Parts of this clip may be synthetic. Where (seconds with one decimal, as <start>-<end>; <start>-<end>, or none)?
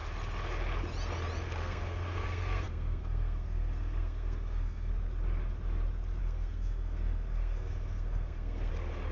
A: 1.6-4.9; 6.2-8.7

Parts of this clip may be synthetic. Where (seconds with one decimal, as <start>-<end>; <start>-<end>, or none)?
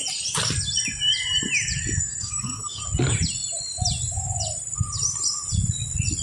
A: 2.0-2.8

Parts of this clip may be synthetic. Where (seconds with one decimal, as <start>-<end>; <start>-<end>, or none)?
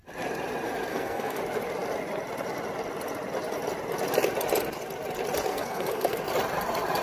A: 0.9-1.4; 5.5-6.2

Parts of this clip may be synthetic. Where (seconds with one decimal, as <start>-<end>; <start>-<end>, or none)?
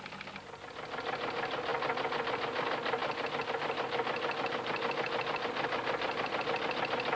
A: none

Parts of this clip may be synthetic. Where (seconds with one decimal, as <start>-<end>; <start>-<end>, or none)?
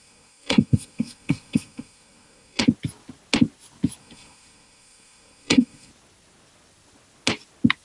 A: 0.0-2.6; 4.0-5.9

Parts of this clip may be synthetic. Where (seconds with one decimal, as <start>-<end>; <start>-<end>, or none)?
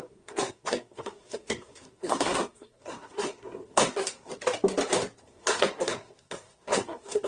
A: 0.0-4.3; 5.2-7.3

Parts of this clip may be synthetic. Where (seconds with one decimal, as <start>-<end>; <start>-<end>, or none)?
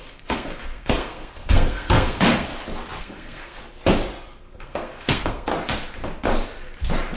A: 0.0-2.5; 3.0-3.6; 4.4-5.5